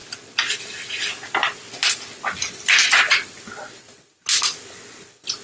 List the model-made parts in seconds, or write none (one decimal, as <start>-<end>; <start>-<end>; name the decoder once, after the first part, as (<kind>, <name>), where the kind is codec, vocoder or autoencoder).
0.0-0.6 (vocoder, BigVGAN v2); 1.4-3.8